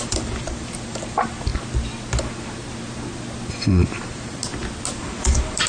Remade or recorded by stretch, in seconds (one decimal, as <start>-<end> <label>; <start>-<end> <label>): 0.0-1.5 remade; 1.5-3.5 recorded; 3.5-4.4 remade; 4.4-4.9 recorded; 4.9-5.7 remade